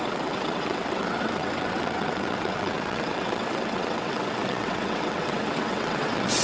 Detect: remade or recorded remade